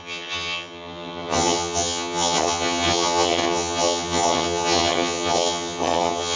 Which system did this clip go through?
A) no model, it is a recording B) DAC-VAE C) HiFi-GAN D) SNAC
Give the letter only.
C